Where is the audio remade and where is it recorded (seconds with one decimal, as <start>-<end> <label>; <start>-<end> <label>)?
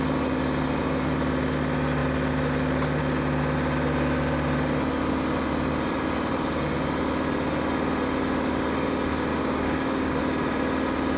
0.0-9.3 recorded; 9.3-10.2 remade; 10.2-11.2 recorded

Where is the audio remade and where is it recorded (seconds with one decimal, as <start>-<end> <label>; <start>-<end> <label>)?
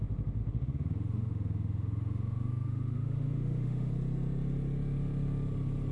0.0-0.4 recorded; 0.4-3.9 remade; 3.9-5.9 recorded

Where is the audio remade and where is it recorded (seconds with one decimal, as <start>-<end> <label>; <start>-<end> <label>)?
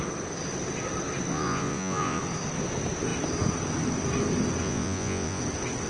0.0-1.3 recorded; 1.3-2.2 remade; 2.2-4.6 recorded; 4.6-5.4 remade; 5.4-5.9 recorded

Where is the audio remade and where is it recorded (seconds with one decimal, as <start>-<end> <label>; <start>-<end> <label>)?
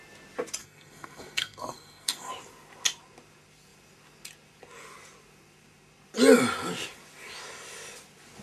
0.0-0.6 recorded; 0.6-2.3 remade; 2.3-8.4 recorded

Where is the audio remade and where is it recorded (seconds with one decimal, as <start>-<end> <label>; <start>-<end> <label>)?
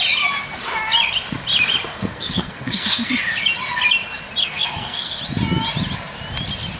0.0-1.9 recorded; 1.9-3.1 remade; 3.1-4.4 recorded; 4.4-5.2 remade; 5.2-6.8 recorded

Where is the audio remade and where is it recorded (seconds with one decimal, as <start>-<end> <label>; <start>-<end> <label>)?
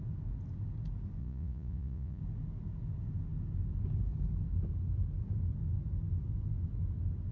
0.0-1.2 recorded; 1.2-2.2 remade; 2.2-7.3 recorded